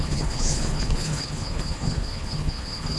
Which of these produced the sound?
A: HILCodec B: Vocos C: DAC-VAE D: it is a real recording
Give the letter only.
A